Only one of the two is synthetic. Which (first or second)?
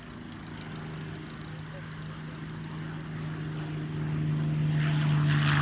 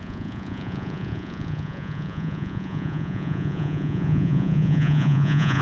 second